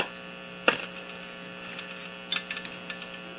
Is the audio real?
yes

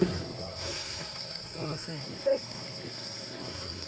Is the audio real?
no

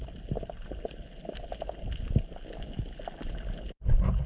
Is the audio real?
yes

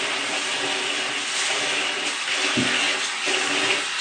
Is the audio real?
yes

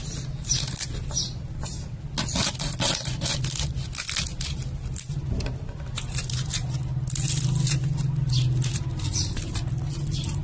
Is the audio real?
yes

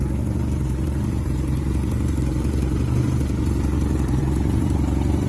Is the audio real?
no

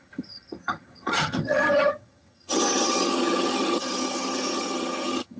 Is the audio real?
no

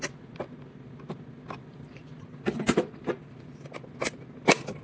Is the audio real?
yes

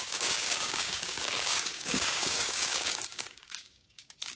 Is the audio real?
no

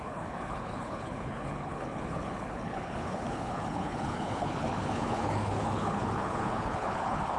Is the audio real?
no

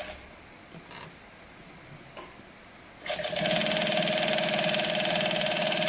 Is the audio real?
yes